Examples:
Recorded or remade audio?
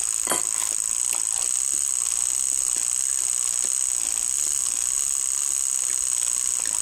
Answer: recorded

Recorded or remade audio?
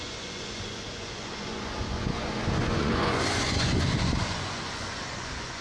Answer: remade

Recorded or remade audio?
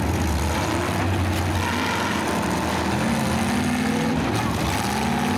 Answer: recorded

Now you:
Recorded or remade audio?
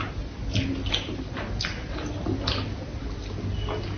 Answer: recorded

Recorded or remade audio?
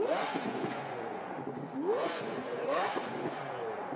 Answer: remade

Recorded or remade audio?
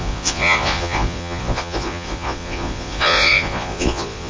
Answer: remade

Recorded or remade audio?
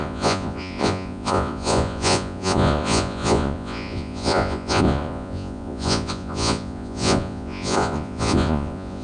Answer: remade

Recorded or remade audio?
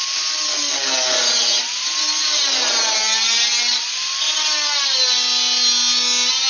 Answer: recorded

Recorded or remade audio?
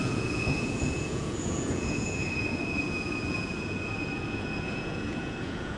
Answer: remade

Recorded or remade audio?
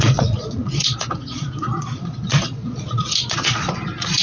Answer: remade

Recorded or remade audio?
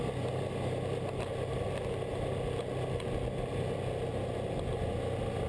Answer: recorded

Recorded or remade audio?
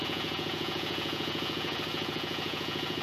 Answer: remade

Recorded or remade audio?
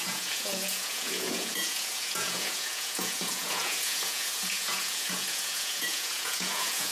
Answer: remade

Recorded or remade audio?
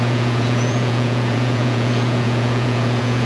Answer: remade